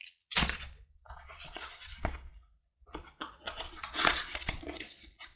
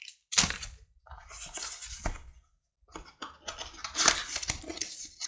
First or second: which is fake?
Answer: first